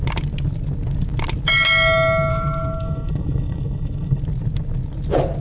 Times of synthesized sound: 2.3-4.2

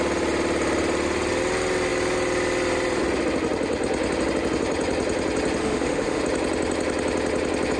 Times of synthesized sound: 5.6-6.2

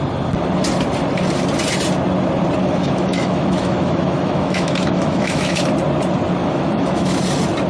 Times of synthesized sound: 2.6-5.6; 6.4-7.2